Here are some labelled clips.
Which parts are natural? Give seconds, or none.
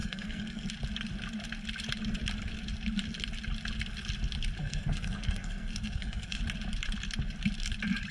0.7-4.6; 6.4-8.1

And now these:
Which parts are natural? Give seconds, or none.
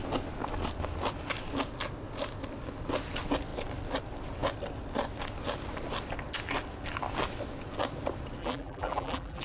0.0-8.4